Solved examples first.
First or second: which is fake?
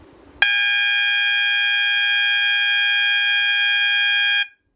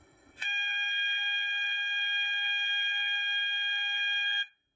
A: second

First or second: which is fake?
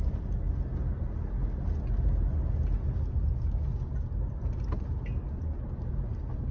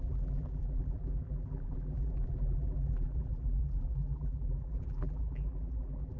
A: second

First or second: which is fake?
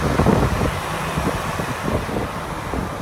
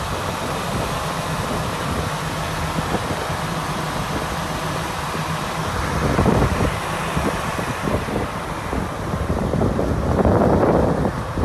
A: second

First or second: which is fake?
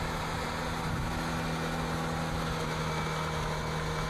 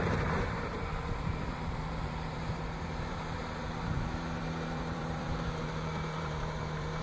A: second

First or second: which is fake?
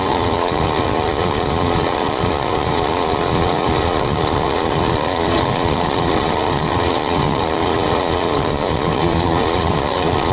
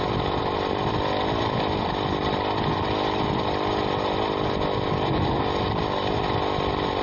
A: first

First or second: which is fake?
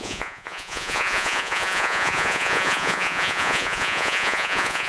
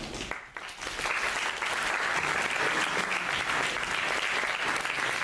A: first